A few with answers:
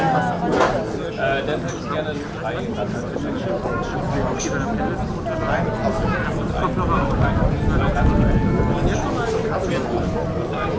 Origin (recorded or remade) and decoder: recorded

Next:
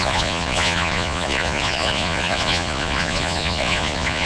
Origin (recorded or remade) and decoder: remade, vocoder, Vocos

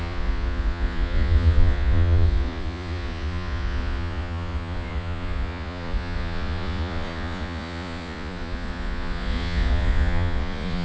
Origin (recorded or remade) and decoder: remade, vocoder, Vocos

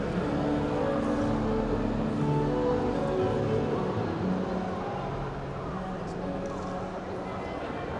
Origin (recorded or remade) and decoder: recorded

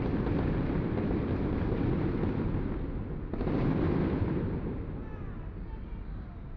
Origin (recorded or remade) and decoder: recorded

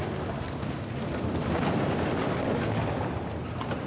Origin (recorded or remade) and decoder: recorded